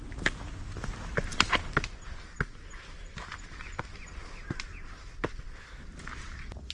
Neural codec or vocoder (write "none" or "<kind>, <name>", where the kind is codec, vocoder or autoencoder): none